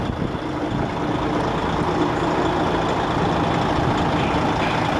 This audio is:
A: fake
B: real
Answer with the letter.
B